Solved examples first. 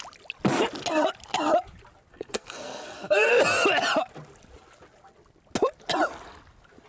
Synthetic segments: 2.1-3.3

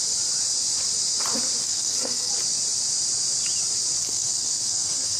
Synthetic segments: 1.6-2.3; 4.0-5.2